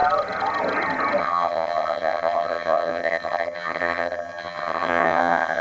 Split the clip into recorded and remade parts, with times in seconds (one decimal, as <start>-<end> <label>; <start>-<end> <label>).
0.0-1.2 recorded; 1.2-5.6 remade